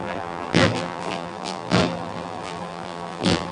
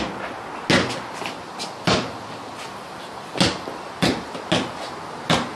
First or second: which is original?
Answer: second